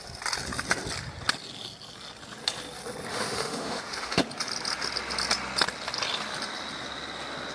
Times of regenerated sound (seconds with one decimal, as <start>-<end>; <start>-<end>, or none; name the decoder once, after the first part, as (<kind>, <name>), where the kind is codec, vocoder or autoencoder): 3.1-4.2 (autoencoder, DAC-VAE)